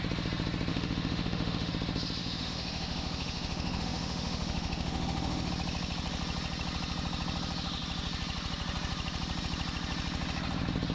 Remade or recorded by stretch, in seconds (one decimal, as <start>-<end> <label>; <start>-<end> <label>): 0.0-0.7 recorded; 0.7-1.7 remade; 1.7-2.2 recorded; 2.2-5.5 remade; 5.5-10.9 recorded

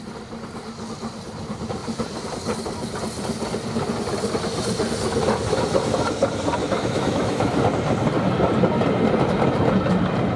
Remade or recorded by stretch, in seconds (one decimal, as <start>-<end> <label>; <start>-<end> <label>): 0.0-6.6 recorded; 6.6-7.6 remade; 7.6-10.4 recorded